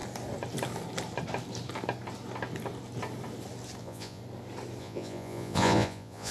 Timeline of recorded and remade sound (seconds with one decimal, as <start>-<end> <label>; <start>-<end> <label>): 0.0-3.8 recorded; 3.8-4.2 remade; 4.2-4.8 recorded; 4.8-6.3 remade